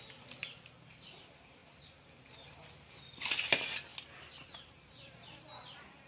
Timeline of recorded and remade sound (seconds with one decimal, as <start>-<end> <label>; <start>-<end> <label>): 0.0-6.1 recorded